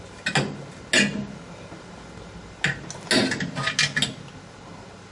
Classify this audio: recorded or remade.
recorded